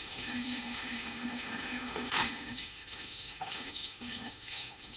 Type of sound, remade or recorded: remade